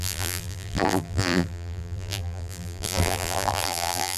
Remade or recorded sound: remade